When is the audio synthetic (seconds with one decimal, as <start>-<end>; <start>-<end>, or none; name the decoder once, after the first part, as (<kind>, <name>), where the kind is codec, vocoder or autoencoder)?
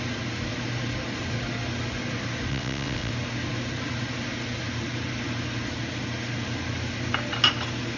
2.5-3.1 (vocoder, WaveNeXt)